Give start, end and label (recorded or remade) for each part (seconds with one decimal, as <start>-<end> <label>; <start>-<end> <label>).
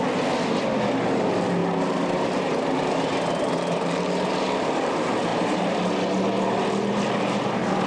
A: 0.0-7.9 recorded